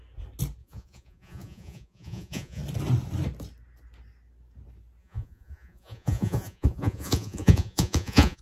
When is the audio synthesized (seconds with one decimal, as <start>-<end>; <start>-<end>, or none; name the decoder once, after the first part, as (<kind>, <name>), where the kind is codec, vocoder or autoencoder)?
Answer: 0.6-2.6 (vocoder, Vocos); 5.0-8.4